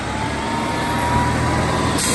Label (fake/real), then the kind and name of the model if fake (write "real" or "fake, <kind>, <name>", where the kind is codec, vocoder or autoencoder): real